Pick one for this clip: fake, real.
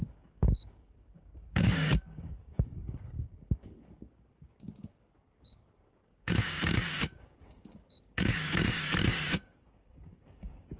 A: fake